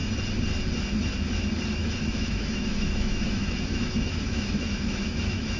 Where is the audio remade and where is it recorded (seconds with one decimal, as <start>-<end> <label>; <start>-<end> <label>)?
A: 0.0-1.8 recorded; 1.8-5.6 remade